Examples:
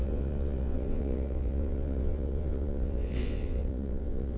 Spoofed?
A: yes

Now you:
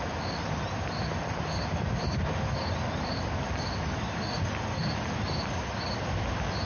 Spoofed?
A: no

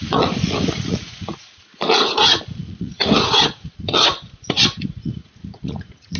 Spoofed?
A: yes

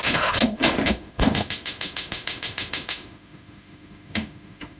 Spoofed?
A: yes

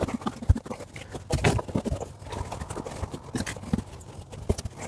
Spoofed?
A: no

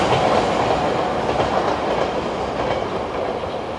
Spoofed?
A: no